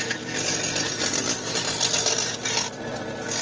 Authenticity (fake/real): real